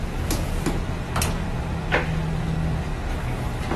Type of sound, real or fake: real